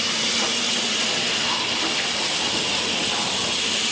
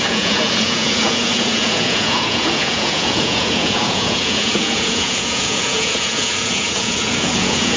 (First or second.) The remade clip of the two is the second